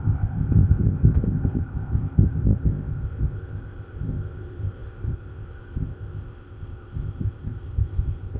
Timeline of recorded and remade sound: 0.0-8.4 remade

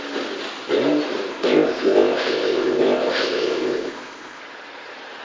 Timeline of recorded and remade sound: 0.0-1.3 recorded; 1.3-4.4 remade; 4.4-5.2 recorded

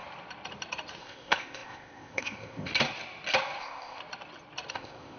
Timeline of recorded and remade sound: 0.0-1.0 recorded; 1.0-2.7 remade; 2.7-3.6 recorded; 3.6-4.0 remade; 4.0-4.7 recorded; 4.7-5.2 remade

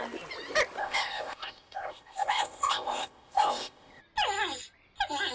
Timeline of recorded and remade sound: 0.0-0.8 recorded; 0.8-4.0 remade; 4.0-5.3 recorded

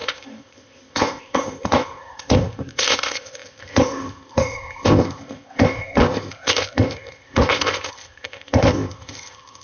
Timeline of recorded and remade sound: 0.0-9.6 remade

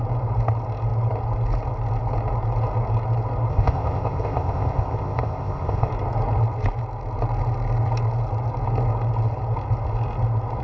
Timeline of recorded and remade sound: 0.0-3.5 recorded; 3.5-5.9 remade; 5.9-10.6 recorded